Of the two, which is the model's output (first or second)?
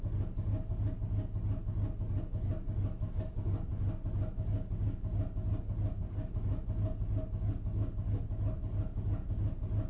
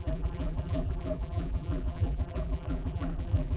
second